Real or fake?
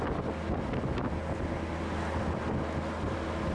real